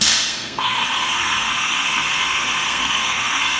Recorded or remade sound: remade